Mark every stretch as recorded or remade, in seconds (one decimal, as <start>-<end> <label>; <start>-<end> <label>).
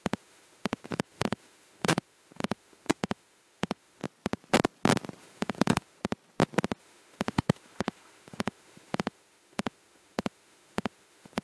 0.0-4.0 remade; 4.0-5.2 recorded; 5.2-6.0 remade; 6.0-6.8 recorded; 6.8-11.4 remade